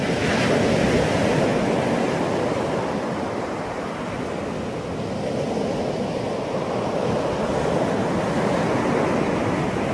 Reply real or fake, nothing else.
real